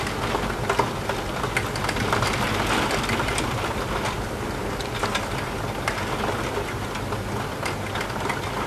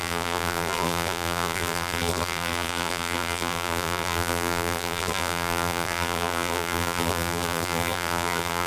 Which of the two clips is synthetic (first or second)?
second